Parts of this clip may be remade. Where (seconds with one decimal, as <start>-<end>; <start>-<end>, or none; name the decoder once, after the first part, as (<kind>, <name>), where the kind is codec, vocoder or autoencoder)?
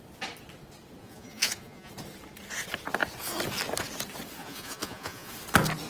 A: 1.0-1.9 (vocoder, Vocos); 4.4-5.3